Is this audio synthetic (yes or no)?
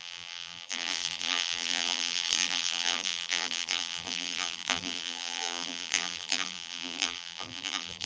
yes